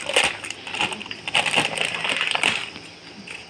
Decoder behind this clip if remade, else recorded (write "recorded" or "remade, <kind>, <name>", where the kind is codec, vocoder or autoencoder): remade, vocoder, BigVGAN v2